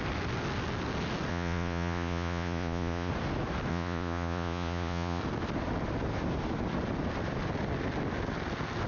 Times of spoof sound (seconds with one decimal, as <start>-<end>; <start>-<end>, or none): 1.3-3.1; 3.7-5.2